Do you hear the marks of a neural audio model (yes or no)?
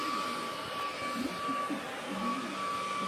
no